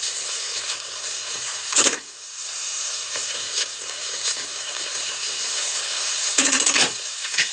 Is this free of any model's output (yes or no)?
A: no